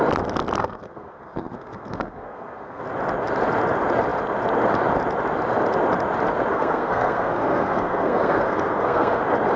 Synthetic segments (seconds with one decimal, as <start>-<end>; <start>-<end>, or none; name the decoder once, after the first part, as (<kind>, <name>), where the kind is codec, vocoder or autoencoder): 0.6-2.8 (codec, SNAC); 6.5-9.2